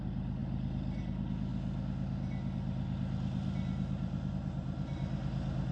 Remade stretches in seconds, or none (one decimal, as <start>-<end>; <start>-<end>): none